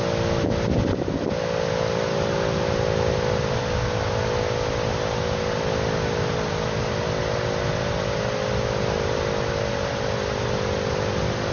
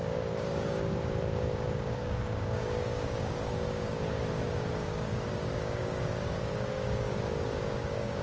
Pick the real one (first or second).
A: first